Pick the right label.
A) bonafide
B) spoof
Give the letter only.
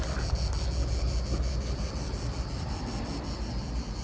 A